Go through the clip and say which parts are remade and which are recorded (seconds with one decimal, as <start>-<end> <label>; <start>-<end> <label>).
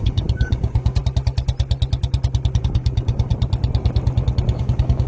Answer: 0.0-1.0 remade; 1.0-2.6 recorded; 2.6-3.3 remade; 3.3-4.6 recorded; 4.6-5.1 remade